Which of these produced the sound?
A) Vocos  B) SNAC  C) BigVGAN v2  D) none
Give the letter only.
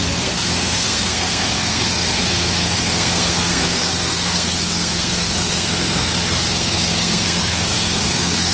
B